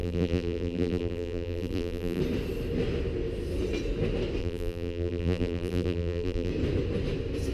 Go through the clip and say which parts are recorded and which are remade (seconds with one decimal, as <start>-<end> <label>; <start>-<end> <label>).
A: 0.0-2.2 remade; 2.2-4.4 recorded; 4.4-6.5 remade; 6.5-7.5 recorded